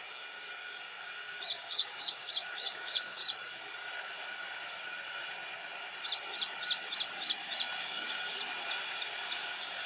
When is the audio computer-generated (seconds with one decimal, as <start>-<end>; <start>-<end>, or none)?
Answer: 0.0-3.2; 7.8-8.3; 9.4-9.9